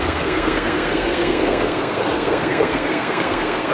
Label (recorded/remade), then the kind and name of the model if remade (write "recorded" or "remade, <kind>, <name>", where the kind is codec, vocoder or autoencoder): remade, codec, SNAC